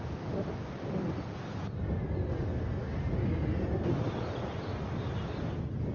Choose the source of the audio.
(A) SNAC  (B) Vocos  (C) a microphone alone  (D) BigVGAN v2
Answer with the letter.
C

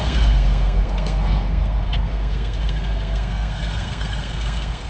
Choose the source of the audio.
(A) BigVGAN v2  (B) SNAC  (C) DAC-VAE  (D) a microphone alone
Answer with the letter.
B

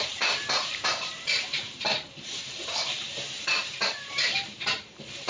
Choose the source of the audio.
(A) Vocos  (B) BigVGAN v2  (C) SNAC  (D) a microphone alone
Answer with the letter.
B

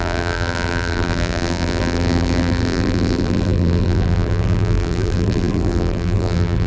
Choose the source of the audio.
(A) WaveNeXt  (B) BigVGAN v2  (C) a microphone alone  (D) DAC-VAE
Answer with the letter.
B